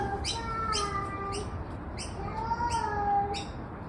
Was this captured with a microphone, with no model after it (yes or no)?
yes